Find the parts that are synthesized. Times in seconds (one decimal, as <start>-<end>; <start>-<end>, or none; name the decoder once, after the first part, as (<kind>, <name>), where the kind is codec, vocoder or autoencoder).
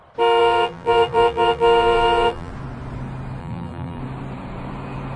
0.4-2.5 (vocoder, BigVGAN v2); 3.4-4.0